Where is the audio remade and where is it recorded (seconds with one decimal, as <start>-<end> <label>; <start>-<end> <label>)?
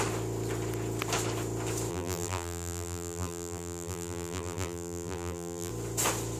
0.0-1.9 recorded; 1.9-5.7 remade; 5.7-6.4 recorded